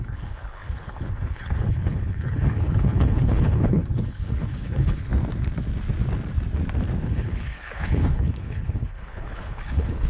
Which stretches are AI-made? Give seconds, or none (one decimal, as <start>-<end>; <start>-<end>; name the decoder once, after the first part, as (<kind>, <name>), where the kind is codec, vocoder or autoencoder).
0.0-5.1 (codec, HILCodec); 7.0-10.1